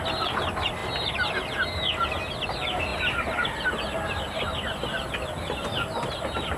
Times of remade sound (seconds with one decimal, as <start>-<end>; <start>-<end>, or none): none